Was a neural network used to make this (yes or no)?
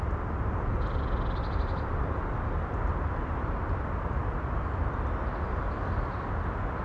no